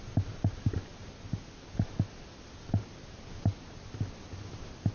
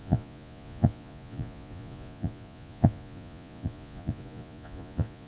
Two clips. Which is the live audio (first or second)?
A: first